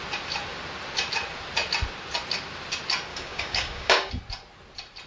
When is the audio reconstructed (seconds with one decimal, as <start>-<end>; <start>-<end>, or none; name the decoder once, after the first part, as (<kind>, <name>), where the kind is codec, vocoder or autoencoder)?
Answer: 3.1-4.1 (codec, DAC)